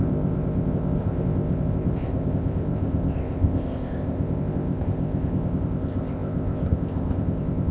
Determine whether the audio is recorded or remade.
remade